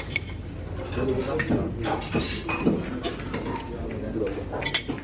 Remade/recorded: recorded